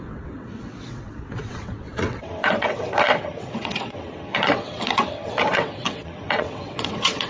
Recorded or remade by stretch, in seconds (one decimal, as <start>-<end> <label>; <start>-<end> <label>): 0.0-7.3 remade